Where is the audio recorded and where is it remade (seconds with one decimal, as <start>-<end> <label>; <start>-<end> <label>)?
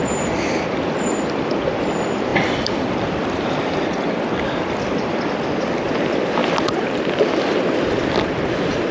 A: 0.0-1.5 remade; 1.5-2.3 recorded; 2.3-5.3 remade; 5.3-8.9 recorded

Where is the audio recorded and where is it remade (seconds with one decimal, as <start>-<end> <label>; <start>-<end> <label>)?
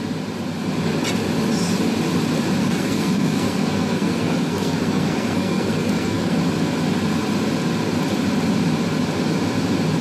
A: 0.0-2.6 recorded; 2.6-6.4 remade; 6.4-10.0 recorded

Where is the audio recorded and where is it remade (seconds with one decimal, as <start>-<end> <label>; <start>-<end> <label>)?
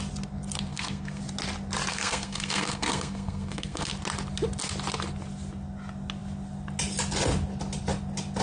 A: 0.0-0.7 recorded; 0.7-1.2 remade; 1.2-1.9 recorded; 1.9-3.9 remade; 3.9-8.4 recorded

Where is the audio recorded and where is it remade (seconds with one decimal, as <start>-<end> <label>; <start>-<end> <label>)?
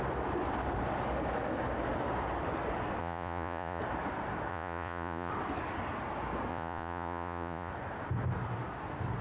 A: 0.0-3.0 recorded; 3.0-3.8 remade; 3.8-4.5 recorded; 4.5-5.3 remade; 5.3-6.5 recorded; 6.5-7.7 remade; 7.7-9.2 recorded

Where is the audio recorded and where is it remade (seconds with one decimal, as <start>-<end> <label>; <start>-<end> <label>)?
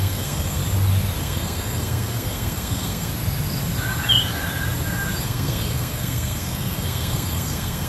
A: 0.0-0.6 remade; 0.6-1.2 recorded; 1.2-3.1 remade; 3.1-5.2 recorded; 5.2-7.9 remade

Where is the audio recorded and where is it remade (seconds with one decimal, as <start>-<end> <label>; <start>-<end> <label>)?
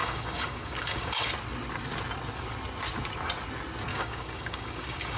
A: 0.0-1.3 remade; 1.3-3.9 recorded; 3.9-5.2 remade